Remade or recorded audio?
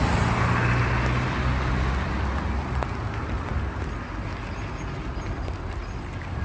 recorded